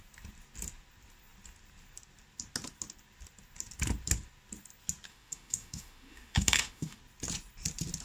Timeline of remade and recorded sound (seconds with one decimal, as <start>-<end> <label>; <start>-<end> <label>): 0.0-5.1 recorded; 5.1-7.0 remade; 7.0-8.0 recorded